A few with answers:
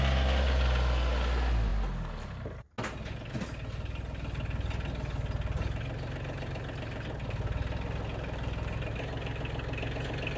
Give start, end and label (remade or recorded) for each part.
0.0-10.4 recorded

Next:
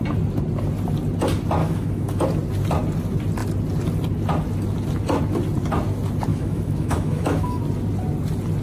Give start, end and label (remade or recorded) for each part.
0.0-1.6 recorded; 1.6-2.2 remade; 2.2-6.3 recorded; 6.3-7.6 remade; 7.6-8.6 recorded